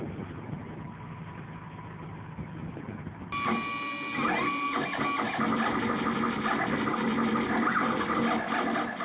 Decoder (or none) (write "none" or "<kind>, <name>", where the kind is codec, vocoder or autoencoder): none